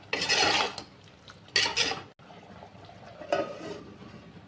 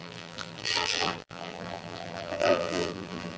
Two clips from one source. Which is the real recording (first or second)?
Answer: first